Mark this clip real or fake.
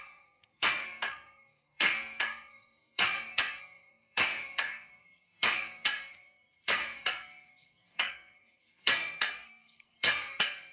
fake